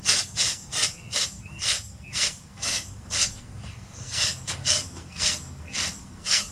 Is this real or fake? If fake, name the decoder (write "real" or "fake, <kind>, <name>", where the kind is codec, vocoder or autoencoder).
fake, codec, SNAC